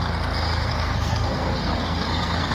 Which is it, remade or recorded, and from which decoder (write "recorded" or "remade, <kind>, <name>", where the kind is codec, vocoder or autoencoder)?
remade, codec, SNAC